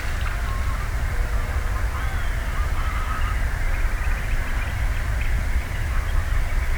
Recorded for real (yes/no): yes